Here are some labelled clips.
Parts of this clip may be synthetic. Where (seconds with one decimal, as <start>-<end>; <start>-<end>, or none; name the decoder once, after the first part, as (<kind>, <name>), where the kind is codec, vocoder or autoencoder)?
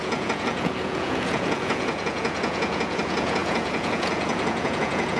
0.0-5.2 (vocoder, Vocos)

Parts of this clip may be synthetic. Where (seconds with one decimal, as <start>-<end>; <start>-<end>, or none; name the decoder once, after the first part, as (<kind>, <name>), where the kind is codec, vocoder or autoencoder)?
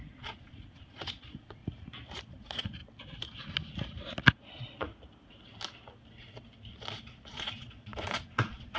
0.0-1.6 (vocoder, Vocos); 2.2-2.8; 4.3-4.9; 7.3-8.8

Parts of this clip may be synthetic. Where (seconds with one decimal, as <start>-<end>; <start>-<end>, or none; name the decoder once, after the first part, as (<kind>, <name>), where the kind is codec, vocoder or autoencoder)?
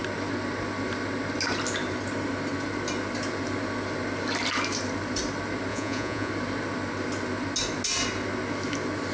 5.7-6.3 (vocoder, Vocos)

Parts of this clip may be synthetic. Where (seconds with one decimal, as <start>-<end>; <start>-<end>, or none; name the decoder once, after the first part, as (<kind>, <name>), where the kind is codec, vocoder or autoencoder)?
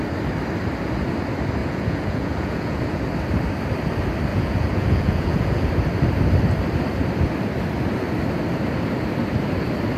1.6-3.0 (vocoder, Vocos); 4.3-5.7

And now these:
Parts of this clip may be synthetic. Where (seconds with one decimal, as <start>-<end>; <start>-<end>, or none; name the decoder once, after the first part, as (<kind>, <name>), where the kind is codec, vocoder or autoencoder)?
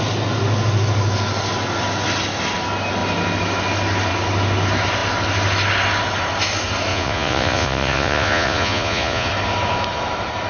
6.9-9.3 (vocoder, Vocos)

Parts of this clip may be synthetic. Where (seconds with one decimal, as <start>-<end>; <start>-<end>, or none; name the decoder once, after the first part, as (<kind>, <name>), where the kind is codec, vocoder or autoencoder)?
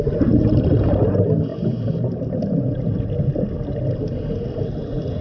none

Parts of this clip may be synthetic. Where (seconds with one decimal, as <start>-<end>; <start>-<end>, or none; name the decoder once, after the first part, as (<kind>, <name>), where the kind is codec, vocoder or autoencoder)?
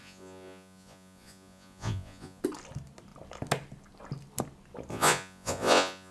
0.0-2.4 (vocoder, Vocos); 4.9-6.1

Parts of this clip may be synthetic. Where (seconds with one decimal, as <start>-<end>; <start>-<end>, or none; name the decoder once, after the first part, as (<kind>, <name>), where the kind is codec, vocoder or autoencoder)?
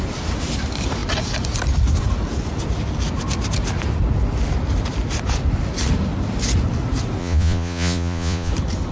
7.2-8.5 (vocoder, Vocos)